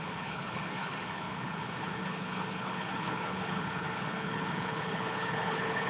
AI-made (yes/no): yes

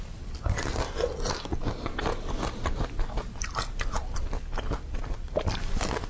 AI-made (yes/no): no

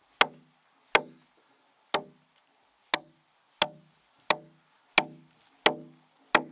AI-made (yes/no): no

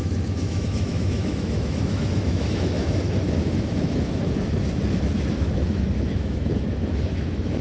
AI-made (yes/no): yes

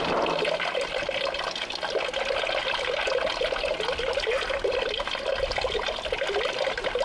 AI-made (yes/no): no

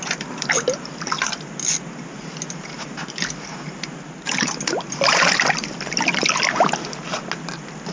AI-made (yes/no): no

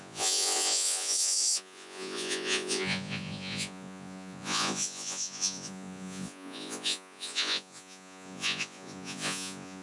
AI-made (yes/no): yes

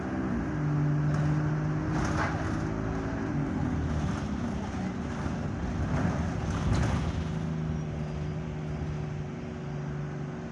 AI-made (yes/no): no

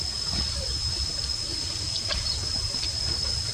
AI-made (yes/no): no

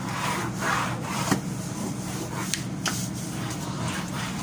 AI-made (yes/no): yes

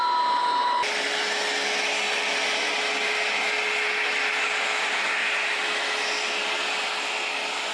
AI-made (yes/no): no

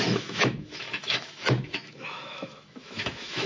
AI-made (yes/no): yes